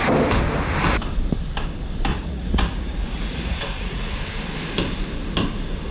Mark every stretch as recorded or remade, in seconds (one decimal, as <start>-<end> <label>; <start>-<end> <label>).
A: 0.0-2.1 recorded; 2.1-4.1 remade; 4.1-5.9 recorded